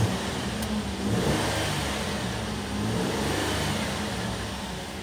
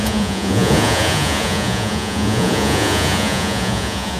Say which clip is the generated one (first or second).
second